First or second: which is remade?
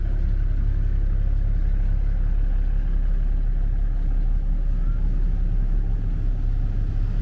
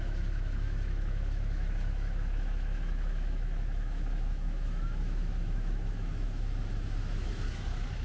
second